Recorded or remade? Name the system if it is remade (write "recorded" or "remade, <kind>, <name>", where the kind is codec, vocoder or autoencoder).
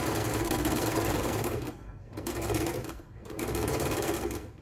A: remade, codec, SNAC